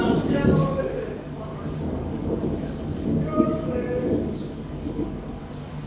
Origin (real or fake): fake